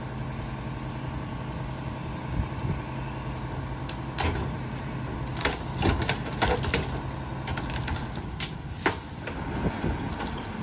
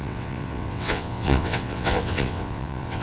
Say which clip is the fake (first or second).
second